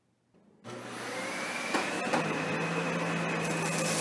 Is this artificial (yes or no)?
no